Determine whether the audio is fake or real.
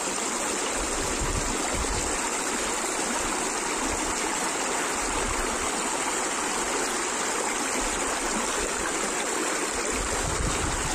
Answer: real